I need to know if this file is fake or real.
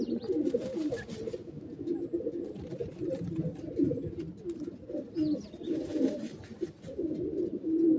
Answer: real